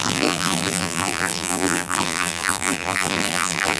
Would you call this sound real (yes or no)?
no